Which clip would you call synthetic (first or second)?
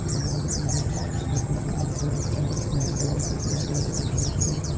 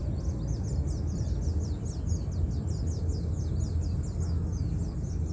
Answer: first